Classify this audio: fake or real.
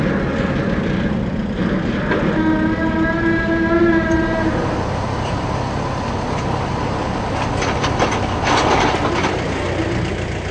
real